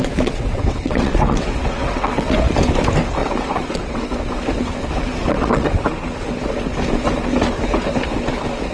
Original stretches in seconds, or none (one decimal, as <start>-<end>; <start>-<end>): 2.6-3.2; 4.0-5.3; 5.8-8.7